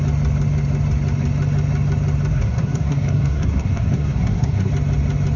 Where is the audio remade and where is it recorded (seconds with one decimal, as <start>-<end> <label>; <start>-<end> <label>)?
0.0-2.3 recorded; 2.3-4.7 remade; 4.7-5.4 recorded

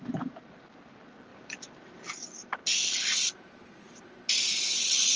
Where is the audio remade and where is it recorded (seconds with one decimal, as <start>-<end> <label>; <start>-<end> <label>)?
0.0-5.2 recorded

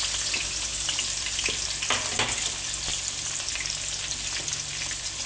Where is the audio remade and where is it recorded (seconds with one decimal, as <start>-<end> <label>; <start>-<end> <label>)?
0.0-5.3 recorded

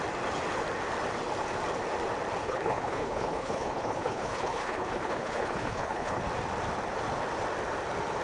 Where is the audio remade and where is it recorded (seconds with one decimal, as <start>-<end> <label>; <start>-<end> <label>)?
0.0-2.4 recorded; 2.4-6.2 remade; 6.2-8.2 recorded

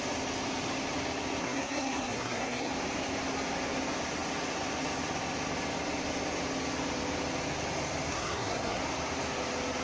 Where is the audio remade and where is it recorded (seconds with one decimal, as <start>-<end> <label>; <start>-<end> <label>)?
0.0-1.4 recorded; 1.4-2.7 remade; 2.7-8.1 recorded; 8.1-8.8 remade; 8.8-9.8 recorded

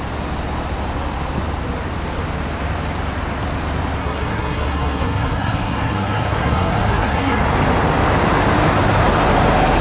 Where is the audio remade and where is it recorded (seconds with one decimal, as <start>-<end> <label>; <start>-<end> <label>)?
0.0-4.0 recorded; 4.0-7.4 remade; 7.4-9.8 recorded

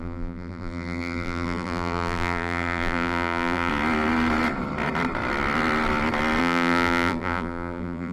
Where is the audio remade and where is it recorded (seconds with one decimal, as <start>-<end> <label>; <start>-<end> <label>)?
0.0-3.7 remade; 3.7-6.4 recorded; 6.4-8.1 remade